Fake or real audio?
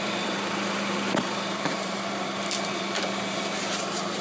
fake